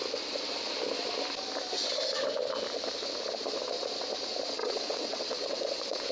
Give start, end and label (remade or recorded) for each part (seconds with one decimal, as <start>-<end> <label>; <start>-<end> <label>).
0.0-4.6 recorded; 4.6-6.1 remade